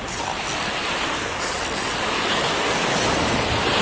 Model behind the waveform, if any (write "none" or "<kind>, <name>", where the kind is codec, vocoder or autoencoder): none